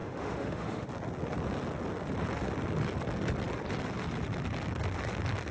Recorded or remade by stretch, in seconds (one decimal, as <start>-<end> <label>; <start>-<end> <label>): 0.0-0.9 remade; 0.9-5.5 recorded